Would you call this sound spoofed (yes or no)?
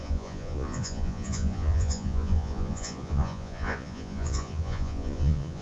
yes